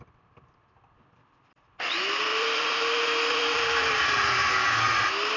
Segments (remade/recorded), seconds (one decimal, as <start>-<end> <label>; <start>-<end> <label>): 0.0-2.3 recorded; 2.3-4.5 remade; 4.5-5.4 recorded